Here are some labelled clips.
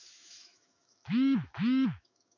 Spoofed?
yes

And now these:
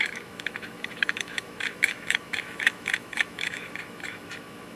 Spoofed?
yes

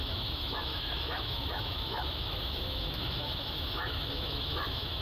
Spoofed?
yes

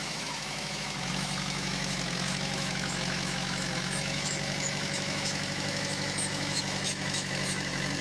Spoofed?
yes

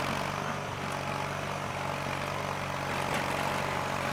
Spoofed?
no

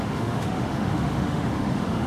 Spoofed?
yes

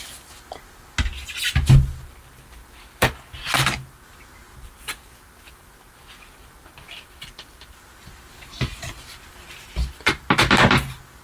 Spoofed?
no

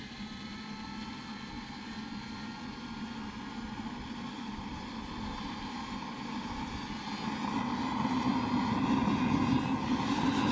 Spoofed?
no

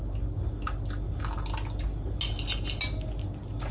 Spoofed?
no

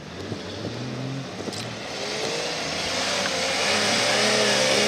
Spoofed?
no